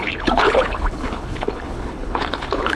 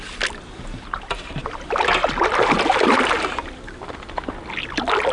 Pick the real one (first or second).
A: second